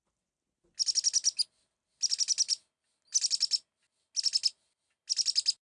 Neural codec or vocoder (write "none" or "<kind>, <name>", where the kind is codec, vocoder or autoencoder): none